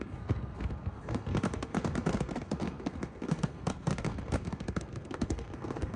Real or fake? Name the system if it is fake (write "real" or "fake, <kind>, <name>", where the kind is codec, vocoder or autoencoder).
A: fake, codec, SNAC